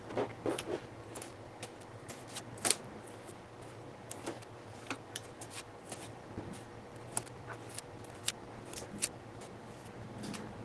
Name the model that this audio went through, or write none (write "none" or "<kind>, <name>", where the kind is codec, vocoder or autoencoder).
none